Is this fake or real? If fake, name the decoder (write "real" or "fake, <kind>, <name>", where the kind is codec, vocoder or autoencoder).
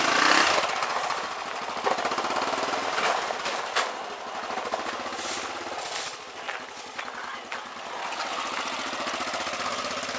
real